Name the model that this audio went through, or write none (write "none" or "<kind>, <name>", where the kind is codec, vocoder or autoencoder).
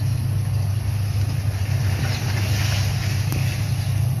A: none